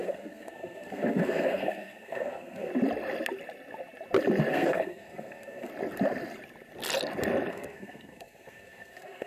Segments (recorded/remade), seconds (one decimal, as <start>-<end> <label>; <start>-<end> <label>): 0.0-2.7 remade; 2.7-4.5 recorded; 4.5-5.7 remade; 5.7-7.5 recorded; 7.5-9.3 remade